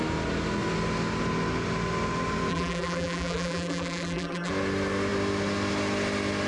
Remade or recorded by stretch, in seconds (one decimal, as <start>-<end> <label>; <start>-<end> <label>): 0.0-2.5 recorded; 2.5-4.5 remade; 4.5-6.5 recorded